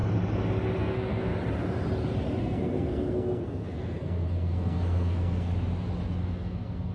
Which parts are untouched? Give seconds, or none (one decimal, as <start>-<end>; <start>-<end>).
0.0-0.8; 1.3-2.4; 5.5-6.2